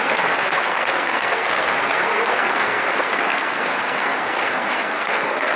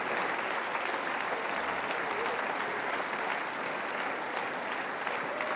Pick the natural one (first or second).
second